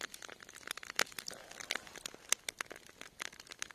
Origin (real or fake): real